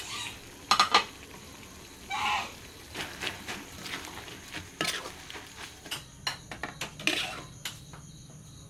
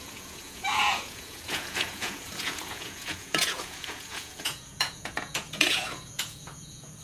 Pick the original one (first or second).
first